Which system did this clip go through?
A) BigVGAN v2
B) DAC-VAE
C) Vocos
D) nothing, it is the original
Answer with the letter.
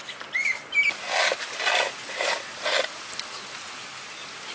D